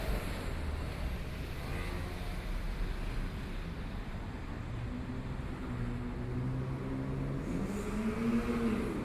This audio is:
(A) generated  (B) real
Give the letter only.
B